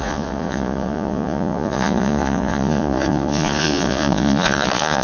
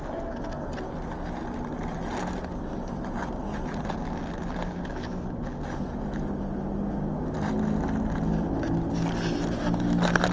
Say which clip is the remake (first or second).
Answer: first